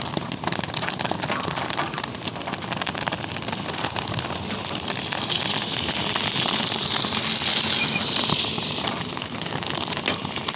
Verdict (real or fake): real